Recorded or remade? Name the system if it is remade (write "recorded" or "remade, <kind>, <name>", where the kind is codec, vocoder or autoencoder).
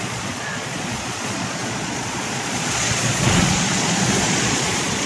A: remade, vocoder, Vocos